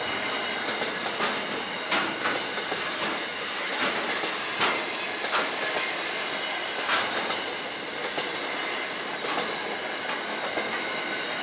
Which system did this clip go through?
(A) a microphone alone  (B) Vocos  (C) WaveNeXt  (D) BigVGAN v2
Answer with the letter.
A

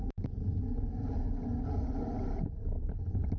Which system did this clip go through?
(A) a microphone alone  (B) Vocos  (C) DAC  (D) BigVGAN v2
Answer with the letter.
A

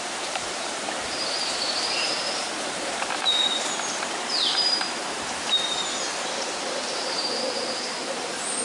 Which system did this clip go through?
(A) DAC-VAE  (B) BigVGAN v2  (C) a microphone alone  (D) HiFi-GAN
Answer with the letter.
B